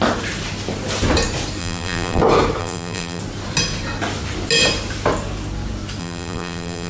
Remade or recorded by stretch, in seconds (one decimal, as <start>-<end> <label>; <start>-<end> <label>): 0.0-1.6 recorded; 1.6-2.2 remade; 2.2-2.6 recorded; 2.6-3.2 remade; 3.2-6.0 recorded; 6.0-6.9 remade